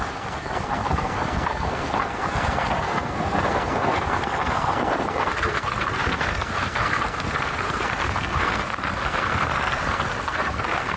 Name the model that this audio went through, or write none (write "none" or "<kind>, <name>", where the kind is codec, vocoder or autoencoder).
codec, SNAC